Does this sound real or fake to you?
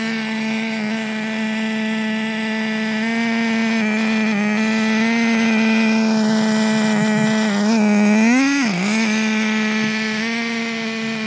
real